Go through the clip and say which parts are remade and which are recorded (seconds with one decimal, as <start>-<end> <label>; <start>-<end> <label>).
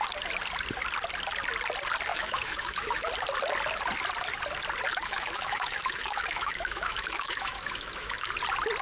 0.0-2.1 recorded; 2.1-3.1 remade; 3.1-4.9 recorded; 4.9-8.3 remade; 8.3-8.8 recorded